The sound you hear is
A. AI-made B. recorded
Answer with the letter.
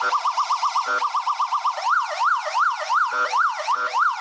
B